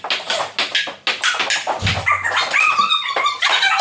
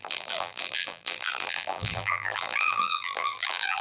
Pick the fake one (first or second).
second